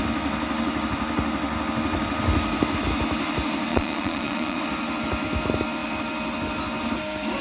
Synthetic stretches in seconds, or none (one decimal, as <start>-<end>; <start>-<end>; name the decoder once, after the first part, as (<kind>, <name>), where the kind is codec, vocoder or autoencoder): 3.7-4.6 (vocoder, Vocos)

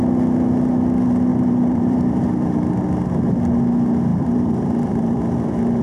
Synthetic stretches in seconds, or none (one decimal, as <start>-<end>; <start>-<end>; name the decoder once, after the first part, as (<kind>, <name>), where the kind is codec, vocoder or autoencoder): 1.3-2.7 (vocoder, BigVGAN v2); 4.1-5.2

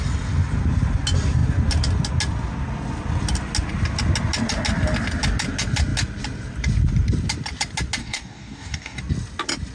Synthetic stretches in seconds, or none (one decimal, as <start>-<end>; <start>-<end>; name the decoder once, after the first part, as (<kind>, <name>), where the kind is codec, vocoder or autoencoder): 8.0-9.0 (codec, DAC)

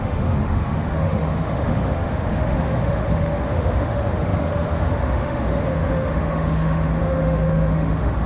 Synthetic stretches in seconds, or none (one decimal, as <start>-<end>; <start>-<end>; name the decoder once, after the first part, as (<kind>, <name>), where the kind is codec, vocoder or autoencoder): 0.0-8.3 (autoencoder, DAC-VAE)

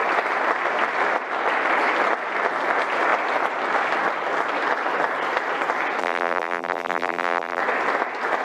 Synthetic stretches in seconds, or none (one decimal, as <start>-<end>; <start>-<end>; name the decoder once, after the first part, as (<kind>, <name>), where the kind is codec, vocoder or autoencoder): 6.0-7.6 (vocoder, BigVGAN v2)

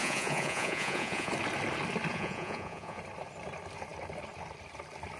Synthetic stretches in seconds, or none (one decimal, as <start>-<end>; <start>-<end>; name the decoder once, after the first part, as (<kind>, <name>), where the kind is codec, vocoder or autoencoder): 0.0-1.3 (vocoder, Vocos); 2.1-3.0

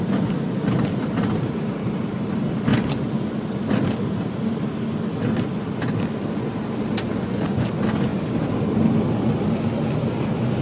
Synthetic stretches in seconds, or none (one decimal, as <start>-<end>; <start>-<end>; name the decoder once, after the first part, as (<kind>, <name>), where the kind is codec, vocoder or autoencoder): 2.7-3.2 (vocoder, Vocos); 7.1-7.7

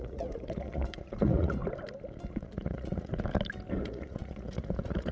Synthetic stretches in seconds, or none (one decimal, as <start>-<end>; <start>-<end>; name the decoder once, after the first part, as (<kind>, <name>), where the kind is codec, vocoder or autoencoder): 0.0-1.6 (vocoder, Vocos); 2.3-3.1; 3.8-5.1